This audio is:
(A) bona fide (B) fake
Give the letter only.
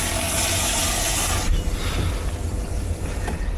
A